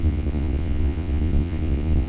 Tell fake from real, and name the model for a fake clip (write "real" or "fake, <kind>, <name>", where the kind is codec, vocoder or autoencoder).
fake, vocoder, Vocos